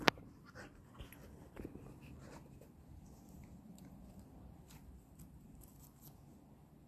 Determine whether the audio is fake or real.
real